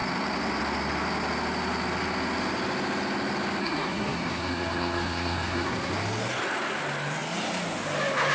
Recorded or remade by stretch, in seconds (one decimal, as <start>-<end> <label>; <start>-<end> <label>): 0.0-3.6 recorded; 3.6-5.9 remade; 5.9-8.3 recorded